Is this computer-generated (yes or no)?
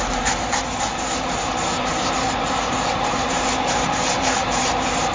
yes